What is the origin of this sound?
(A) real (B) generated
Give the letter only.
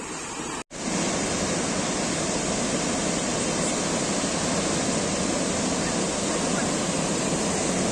A